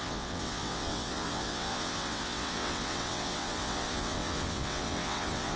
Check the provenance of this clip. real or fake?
fake